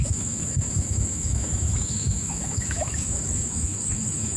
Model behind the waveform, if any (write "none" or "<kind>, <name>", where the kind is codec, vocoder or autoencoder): autoencoder, DAC-VAE